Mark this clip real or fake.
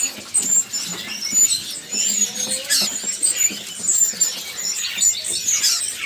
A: real